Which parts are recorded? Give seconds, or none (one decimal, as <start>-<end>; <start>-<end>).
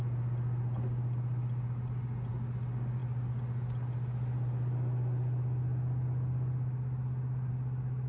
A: 0.0-8.1